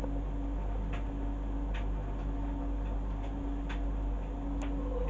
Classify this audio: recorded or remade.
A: recorded